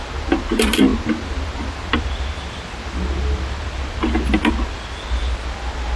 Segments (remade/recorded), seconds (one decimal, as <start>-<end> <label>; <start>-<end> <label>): 0.0-6.0 recorded